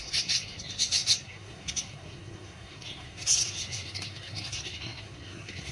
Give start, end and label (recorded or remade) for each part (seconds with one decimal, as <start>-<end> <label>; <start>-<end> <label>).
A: 0.0-5.7 remade